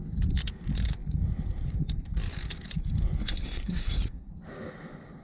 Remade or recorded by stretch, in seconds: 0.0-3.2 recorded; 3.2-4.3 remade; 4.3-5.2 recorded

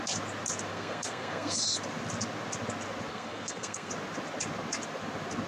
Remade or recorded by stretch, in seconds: 0.0-0.7 recorded; 0.7-1.6 remade; 1.6-3.1 recorded; 3.1-3.9 remade; 3.9-5.5 recorded